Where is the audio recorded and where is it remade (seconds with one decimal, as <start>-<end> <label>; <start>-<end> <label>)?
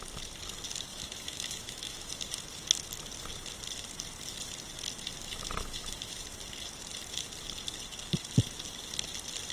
0.0-0.9 recorded; 0.9-2.3 remade; 2.3-5.2 recorded; 5.2-6.2 remade; 6.2-9.5 recorded